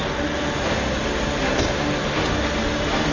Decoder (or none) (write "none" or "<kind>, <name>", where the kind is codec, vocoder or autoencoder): none